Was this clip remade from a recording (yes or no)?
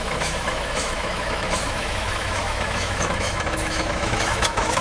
yes